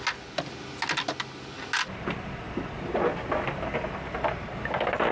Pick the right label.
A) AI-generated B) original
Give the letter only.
B